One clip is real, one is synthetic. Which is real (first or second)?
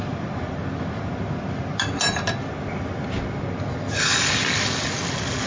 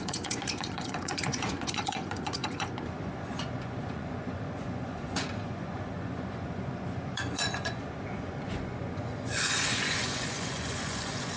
first